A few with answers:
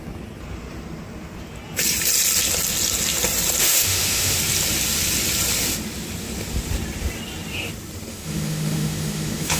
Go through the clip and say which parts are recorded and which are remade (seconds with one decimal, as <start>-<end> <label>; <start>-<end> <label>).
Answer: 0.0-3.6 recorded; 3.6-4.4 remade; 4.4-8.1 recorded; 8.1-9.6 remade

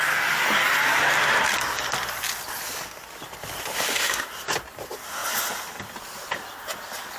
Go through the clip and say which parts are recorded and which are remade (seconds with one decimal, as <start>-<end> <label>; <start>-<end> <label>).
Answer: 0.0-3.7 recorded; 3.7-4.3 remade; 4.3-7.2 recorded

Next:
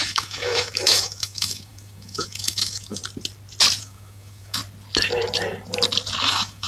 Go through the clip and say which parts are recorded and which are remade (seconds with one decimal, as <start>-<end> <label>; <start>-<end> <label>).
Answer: 0.0-3.0 remade; 3.0-3.8 recorded; 3.8-4.6 remade; 4.6-6.2 recorded; 6.2-6.7 remade

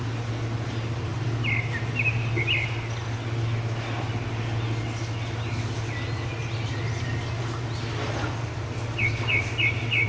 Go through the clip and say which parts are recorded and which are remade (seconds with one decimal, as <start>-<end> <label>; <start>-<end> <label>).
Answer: 0.0-10.1 recorded

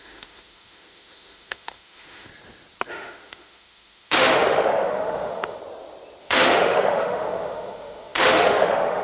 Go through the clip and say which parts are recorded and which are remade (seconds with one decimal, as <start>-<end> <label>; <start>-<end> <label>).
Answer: 0.0-2.3 remade; 2.3-2.9 recorded; 2.9-5.6 remade; 5.6-6.2 recorded; 6.2-9.0 remade

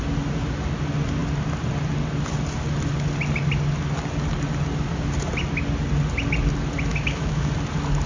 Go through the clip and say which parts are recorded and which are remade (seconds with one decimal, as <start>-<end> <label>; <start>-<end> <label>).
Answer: 0.0-6.9 recorded; 6.9-7.5 remade; 7.5-8.1 recorded